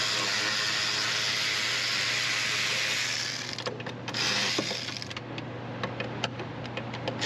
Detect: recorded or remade recorded